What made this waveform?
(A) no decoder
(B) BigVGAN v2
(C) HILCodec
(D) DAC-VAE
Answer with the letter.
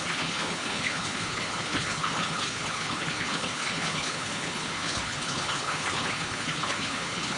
C